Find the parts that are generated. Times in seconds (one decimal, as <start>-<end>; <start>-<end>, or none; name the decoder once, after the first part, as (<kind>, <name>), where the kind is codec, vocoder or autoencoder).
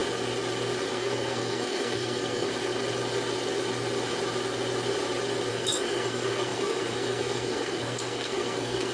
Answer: 0.9-2.5 (codec, SNAC); 5.5-8.9